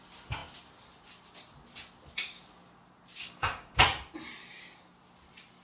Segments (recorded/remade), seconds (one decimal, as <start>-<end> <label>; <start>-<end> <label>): 0.0-3.2 recorded; 3.2-3.8 remade; 3.8-5.6 recorded